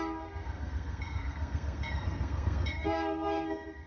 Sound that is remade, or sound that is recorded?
remade